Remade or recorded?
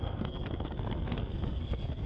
remade